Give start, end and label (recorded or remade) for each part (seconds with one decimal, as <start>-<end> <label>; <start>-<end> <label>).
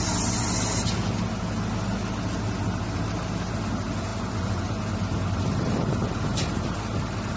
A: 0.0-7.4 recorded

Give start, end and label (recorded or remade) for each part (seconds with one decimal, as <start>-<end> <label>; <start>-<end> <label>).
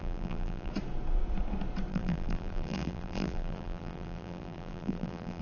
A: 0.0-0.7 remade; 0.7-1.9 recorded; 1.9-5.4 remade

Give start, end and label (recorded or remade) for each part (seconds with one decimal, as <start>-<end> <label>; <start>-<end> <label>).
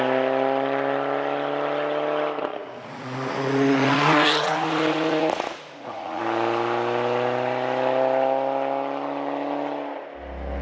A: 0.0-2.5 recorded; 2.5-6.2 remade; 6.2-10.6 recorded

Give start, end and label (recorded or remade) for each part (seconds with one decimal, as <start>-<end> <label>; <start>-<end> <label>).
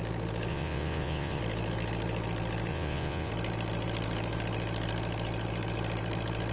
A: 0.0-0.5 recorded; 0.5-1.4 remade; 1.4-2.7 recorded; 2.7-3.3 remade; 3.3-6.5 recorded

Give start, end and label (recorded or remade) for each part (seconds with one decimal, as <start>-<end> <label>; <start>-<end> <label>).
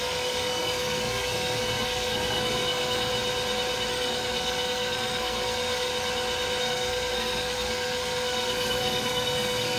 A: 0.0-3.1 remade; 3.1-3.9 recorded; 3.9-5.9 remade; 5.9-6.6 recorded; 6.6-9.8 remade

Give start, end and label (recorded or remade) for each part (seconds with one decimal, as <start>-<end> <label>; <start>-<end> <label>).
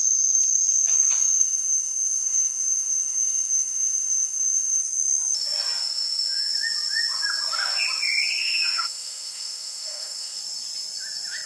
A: 0.0-1.2 recorded; 1.2-4.8 remade; 4.8-5.8 recorded; 5.8-6.5 remade; 6.5-8.4 recorded; 8.4-10.4 remade; 10.4-11.5 recorded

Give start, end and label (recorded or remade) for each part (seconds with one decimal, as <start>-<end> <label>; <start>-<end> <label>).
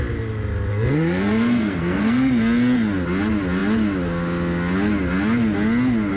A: 0.0-0.7 recorded; 0.7-2.3 remade; 2.3-6.2 recorded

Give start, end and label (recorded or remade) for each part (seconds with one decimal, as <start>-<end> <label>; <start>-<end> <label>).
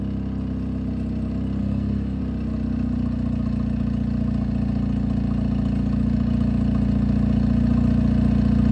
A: 0.0-1.6 recorded; 1.6-2.2 remade; 2.2-8.7 recorded